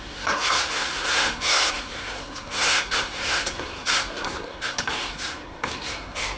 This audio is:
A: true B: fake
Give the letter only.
B